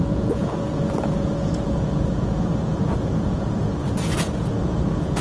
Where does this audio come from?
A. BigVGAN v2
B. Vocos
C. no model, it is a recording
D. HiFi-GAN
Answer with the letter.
B